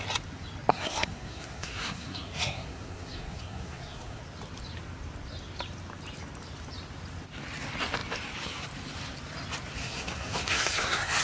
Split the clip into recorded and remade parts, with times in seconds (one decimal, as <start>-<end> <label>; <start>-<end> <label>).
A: 0.0-0.7 recorded; 0.7-4.2 remade; 4.2-9.8 recorded; 9.8-11.2 remade

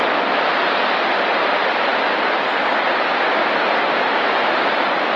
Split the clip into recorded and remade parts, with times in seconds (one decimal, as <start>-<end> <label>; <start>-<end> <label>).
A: 0.0-5.2 recorded

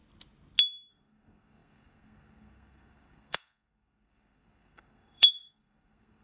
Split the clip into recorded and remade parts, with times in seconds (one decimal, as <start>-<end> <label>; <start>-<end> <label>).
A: 0.0-0.9 recorded; 0.9-6.2 remade

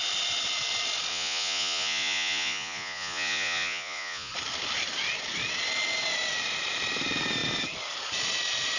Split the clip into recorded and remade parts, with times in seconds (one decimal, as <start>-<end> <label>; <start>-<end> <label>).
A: 0.0-1.1 recorded; 1.1-4.3 remade; 4.3-8.8 recorded